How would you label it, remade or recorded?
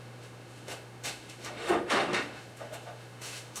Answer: remade